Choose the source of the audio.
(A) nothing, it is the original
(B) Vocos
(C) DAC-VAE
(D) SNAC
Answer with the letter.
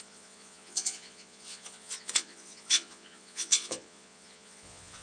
B